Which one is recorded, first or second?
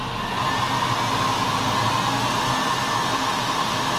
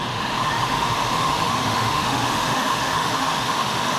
first